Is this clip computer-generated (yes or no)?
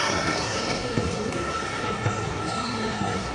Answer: yes